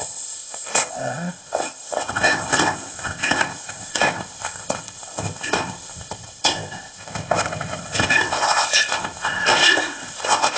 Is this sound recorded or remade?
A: remade